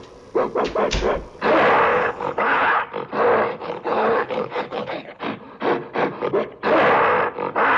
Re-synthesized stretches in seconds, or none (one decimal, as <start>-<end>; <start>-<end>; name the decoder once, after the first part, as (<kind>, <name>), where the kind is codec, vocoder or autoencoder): 1.9-2.8 (codec, HILCodec); 3.6-5.2